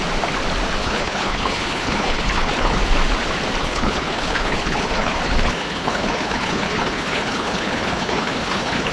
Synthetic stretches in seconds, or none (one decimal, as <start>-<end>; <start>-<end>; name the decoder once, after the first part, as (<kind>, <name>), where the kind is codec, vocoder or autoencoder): 0.8-2.8 (codec, HILCodec); 3.6-8.9